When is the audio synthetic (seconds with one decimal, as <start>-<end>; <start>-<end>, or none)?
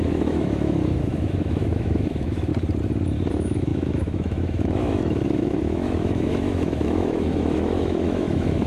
0.0-2.5; 3.3-8.7